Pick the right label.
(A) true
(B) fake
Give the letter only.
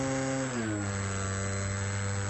A